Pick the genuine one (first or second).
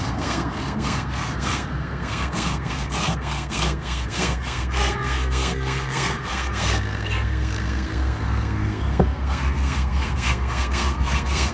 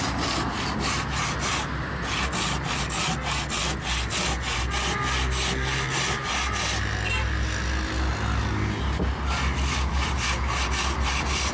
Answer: second